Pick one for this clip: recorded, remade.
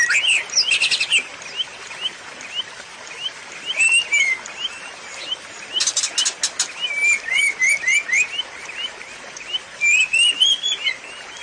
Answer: recorded